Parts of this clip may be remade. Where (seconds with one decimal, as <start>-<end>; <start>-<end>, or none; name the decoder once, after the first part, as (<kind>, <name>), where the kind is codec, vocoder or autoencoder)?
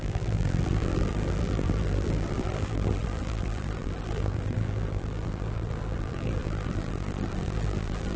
0.0-8.2 (vocoder, BigVGAN v2)